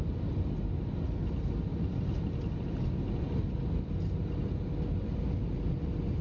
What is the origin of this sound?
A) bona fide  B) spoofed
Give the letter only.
A